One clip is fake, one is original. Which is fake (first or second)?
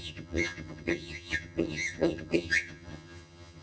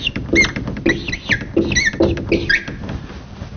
first